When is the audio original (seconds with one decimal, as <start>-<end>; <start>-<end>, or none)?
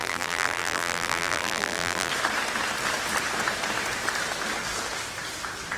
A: 2.1-5.8